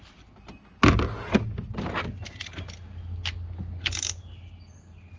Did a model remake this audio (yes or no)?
no